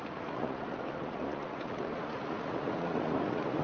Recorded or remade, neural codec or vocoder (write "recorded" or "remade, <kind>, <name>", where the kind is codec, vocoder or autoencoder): remade, vocoder, Vocos